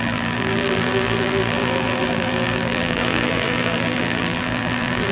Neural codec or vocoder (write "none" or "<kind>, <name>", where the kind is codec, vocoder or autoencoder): vocoder, BigVGAN v2